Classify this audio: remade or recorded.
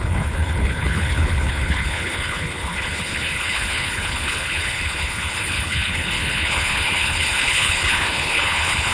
remade